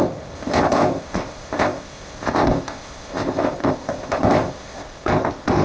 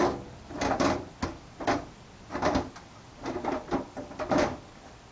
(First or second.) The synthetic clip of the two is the first